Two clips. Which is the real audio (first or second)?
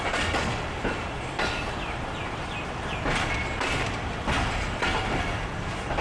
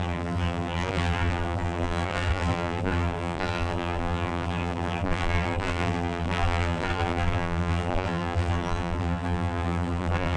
first